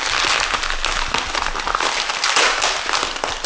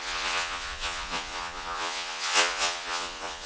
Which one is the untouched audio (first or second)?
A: first